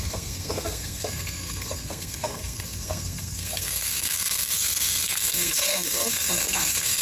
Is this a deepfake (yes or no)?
yes